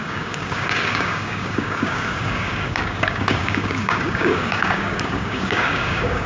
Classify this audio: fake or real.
fake